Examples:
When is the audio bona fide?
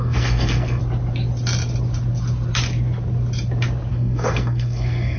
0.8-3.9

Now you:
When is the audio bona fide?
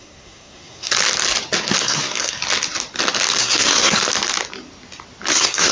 0.9-1.8; 2.4-3.4; 4.0-5.3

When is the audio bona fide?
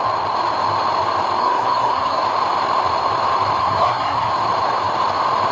0.0-1.4; 2.2-3.6; 4.3-5.5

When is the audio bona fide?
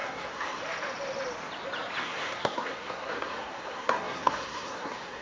0.6-2.0